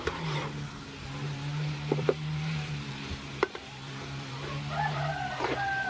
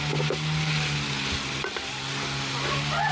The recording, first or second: second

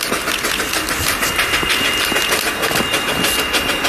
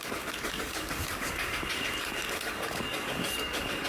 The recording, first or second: first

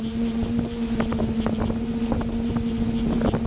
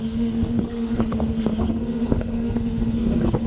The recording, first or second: first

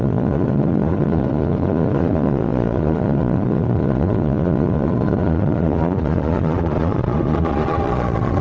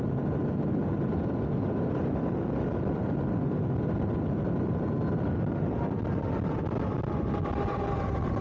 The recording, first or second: second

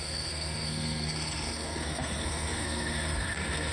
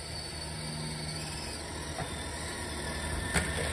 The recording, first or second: second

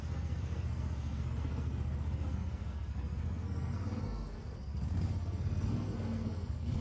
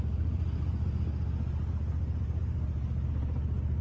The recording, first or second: second